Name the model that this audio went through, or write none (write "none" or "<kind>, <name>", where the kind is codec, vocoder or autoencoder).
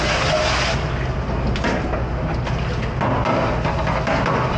none